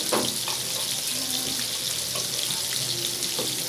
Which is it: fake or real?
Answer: real